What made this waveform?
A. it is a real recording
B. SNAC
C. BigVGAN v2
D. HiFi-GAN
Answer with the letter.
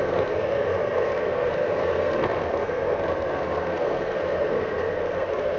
B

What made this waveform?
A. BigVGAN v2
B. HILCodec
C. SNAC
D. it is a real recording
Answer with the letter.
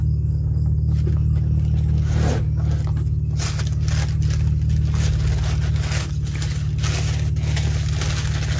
D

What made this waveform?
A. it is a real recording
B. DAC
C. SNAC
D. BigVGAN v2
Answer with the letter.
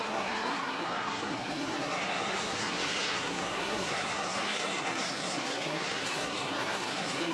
C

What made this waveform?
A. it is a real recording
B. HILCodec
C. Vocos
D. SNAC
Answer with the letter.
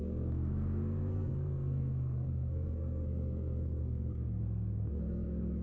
D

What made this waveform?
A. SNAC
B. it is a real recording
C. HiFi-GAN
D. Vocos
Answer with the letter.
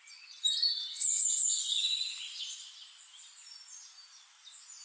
B